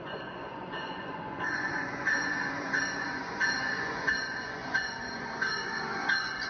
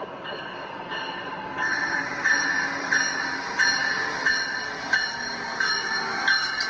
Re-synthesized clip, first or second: first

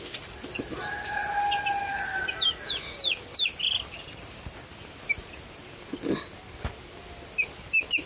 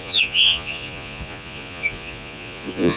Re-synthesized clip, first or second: second